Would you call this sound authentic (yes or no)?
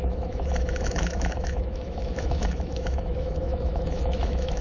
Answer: no